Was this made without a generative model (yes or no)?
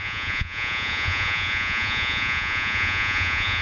no